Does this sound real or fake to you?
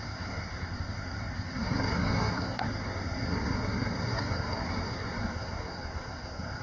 fake